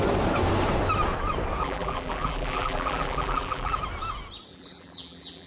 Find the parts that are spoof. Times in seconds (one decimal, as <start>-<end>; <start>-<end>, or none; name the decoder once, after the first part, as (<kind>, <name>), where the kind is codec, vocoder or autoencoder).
1.6-3.8 (vocoder, BigVGAN v2); 4.5-5.5